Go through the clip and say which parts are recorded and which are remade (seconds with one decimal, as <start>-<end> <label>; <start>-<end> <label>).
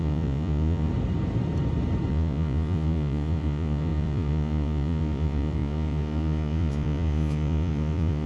0.0-0.9 remade; 0.9-2.1 recorded; 2.1-8.3 remade